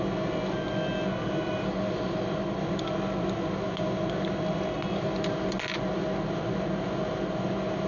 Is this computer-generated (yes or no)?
no